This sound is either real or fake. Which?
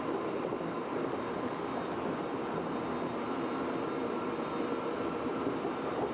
real